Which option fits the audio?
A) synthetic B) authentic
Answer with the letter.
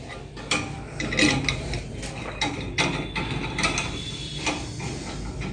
B